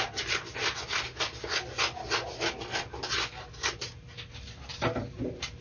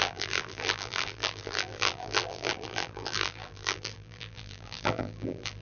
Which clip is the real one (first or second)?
first